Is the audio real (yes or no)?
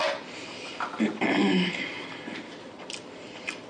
yes